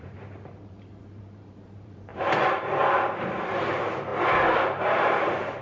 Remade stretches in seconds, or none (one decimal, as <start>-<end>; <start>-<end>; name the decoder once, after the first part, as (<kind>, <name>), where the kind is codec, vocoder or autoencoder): 0.0-4.1 (vocoder, BigVGAN v2); 4.8-5.6